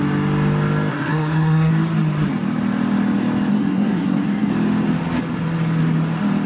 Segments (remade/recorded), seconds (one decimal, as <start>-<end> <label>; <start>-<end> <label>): 0.0-0.9 recorded; 0.9-1.7 remade; 1.7-3.5 recorded; 3.5-4.5 remade; 4.5-6.5 recorded